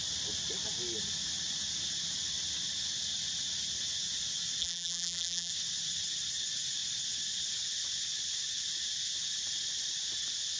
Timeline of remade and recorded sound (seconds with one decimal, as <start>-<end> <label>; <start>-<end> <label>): 0.0-4.6 recorded; 4.6-5.5 remade; 5.5-10.6 recorded